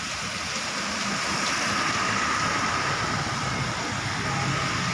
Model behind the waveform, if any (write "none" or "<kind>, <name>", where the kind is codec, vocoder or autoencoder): none